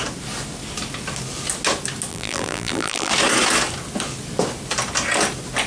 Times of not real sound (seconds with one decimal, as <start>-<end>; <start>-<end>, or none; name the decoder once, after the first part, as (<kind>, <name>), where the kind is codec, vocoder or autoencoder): 2.1-3.1 (vocoder, BigVGAN v2)

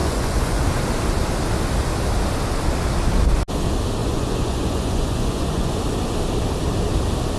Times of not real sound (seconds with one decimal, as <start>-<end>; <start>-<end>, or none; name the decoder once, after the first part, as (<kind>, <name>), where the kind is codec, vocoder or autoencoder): 0.0-0.6 (vocoder, Vocos); 4.0-5.8

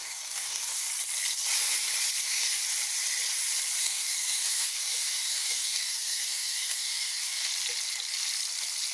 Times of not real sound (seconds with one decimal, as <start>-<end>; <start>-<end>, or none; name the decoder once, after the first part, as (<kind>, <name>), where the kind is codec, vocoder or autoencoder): 0.0-0.9 (codec, DAC); 2.2-2.6; 3.8-7.5

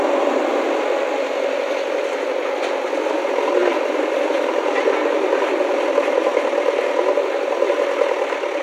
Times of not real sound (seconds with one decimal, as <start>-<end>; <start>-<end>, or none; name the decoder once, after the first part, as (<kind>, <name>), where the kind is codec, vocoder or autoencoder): none